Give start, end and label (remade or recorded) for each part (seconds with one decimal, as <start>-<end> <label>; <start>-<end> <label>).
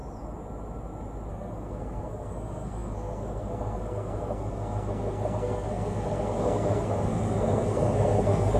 0.0-1.3 recorded; 1.3-8.6 remade